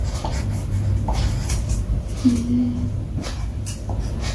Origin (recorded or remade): recorded